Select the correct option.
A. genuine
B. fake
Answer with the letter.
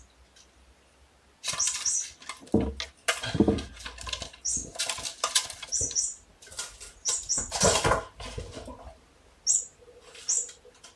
A